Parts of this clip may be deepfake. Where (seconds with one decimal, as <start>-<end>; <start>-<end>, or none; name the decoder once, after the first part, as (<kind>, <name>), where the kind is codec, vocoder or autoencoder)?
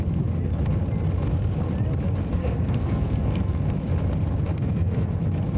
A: 2.4-3.6 (codec, SNAC); 4.5-5.1